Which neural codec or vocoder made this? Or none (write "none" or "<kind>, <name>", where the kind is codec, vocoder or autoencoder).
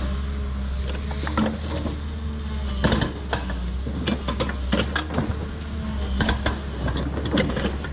none